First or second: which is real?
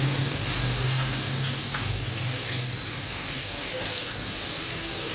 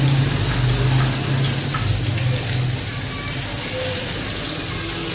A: second